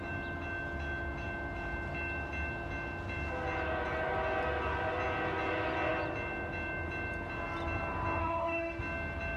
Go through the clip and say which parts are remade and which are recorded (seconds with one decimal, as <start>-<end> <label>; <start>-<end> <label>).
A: 0.0-8.2 recorded; 8.2-8.8 remade; 8.8-9.4 recorded